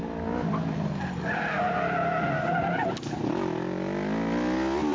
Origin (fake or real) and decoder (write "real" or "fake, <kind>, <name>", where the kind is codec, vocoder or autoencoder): real